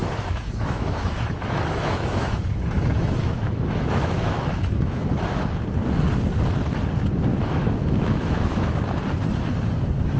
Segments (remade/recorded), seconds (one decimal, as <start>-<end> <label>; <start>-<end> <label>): 0.0-5.1 remade; 5.1-7.3 recorded; 7.3-8.8 remade; 8.8-10.2 recorded